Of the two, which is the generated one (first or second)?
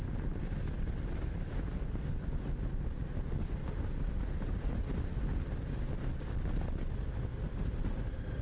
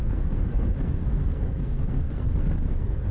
second